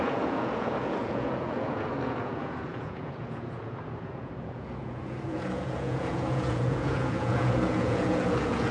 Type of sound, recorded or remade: remade